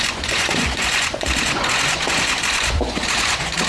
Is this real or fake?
fake